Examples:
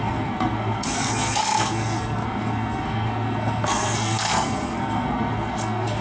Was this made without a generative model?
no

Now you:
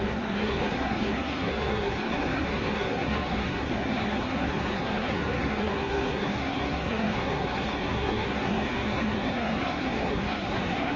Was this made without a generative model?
no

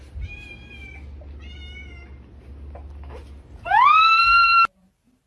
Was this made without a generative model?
yes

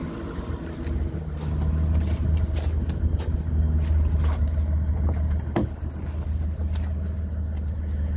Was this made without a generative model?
yes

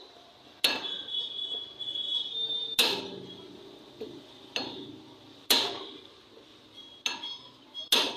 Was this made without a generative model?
yes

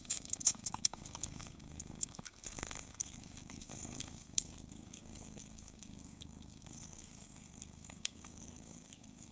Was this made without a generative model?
no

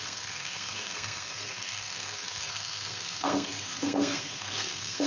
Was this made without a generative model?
no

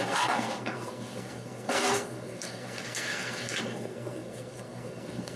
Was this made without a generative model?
no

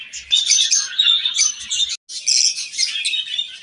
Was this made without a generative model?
yes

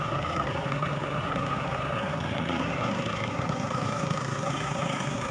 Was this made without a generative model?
no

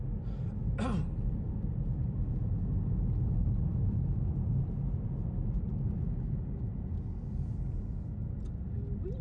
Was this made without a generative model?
yes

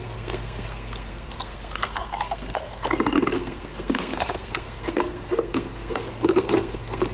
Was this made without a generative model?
no